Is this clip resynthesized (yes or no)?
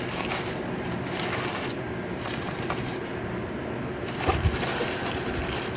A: no